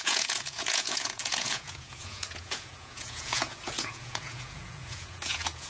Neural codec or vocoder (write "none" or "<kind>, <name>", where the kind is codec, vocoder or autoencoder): vocoder, Vocos